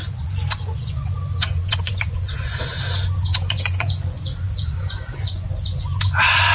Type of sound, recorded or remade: remade